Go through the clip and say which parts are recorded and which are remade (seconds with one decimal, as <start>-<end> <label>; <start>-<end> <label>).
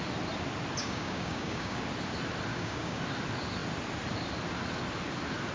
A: 0.0-0.8 recorded; 0.8-1.8 remade; 1.8-2.5 recorded; 2.5-3.0 remade; 3.0-5.5 recorded